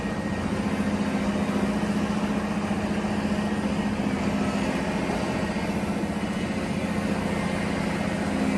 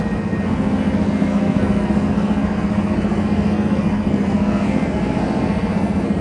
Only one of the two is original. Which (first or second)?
first